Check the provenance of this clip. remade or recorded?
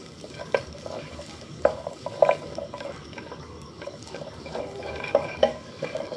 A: remade